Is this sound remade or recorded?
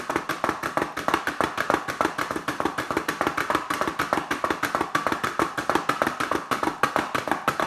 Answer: recorded